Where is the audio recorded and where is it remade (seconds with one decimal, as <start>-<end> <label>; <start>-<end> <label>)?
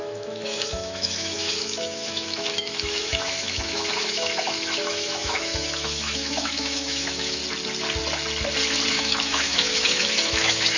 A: 0.0-7.4 remade; 7.4-8.9 recorded; 8.9-10.8 remade